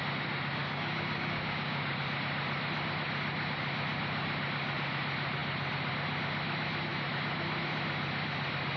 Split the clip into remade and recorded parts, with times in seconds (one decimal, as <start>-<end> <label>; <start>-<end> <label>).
0.0-0.6 recorded; 0.6-2.0 remade; 2.0-8.8 recorded